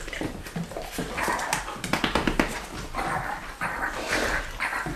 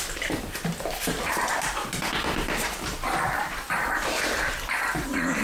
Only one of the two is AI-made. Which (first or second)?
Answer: second